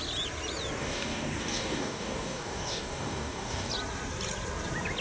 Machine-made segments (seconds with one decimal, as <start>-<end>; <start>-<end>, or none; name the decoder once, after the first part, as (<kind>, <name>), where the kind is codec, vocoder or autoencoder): 0.8-3.7 (codec, DAC)